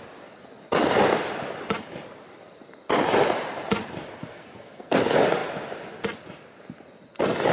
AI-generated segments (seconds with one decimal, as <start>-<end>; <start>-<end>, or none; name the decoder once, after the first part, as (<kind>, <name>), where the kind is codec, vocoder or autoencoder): 4.3-5.0 (codec, SNAC)